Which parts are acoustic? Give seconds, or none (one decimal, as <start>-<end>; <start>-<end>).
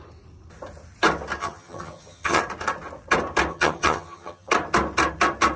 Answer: 0.0-1.4; 2.4-3.5; 4.5-5.6